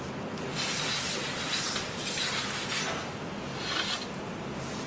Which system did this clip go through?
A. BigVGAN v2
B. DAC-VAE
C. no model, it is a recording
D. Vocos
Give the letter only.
C